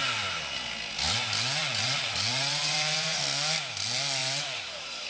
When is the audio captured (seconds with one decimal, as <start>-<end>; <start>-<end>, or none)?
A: 0.0-1.6; 3.2-4.2